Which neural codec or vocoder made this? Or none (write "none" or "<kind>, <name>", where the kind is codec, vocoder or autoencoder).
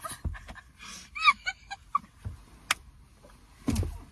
none